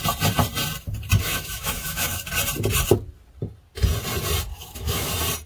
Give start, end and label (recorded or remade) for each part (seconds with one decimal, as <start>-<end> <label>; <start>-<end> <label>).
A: 0.0-1.2 recorded; 1.2-2.3 remade; 2.3-4.5 recorded; 4.5-5.1 remade; 5.1-5.5 recorded